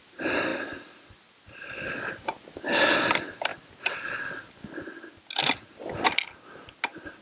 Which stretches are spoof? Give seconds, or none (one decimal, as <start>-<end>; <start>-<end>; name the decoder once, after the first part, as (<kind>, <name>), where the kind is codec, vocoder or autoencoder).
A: none